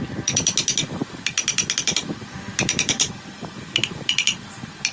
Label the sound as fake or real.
real